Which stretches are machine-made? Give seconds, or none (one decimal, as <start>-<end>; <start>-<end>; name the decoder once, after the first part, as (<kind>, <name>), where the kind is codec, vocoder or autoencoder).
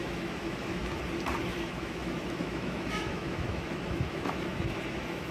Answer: 0.0-0.8 (autoencoder, DAC-VAE); 1.4-5.3